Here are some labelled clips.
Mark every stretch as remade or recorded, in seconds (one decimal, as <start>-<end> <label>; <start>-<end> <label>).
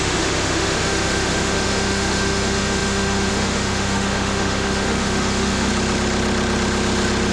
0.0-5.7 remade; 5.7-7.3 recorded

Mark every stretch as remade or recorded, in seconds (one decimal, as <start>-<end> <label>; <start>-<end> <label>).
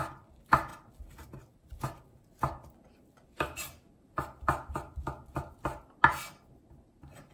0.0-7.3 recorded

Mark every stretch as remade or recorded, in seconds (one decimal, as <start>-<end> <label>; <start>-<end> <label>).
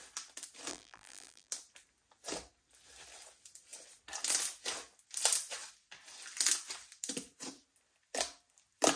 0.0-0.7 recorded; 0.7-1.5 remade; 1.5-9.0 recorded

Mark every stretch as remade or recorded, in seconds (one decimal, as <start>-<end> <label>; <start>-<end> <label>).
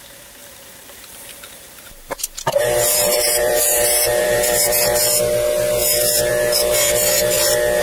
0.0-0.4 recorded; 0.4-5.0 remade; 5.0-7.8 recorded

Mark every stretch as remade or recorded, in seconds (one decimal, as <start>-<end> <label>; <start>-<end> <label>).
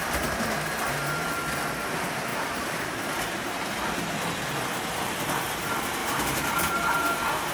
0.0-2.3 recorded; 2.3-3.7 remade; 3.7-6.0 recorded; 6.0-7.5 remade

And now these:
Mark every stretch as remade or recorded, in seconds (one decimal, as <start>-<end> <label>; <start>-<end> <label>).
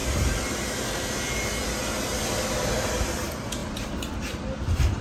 0.0-3.0 recorded; 3.0-5.0 remade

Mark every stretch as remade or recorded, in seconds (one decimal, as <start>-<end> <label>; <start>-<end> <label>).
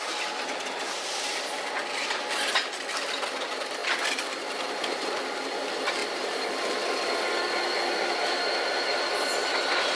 0.0-3.8 recorded; 3.8-4.8 remade; 4.8-6.0 recorded; 6.0-6.5 remade; 6.5-10.0 recorded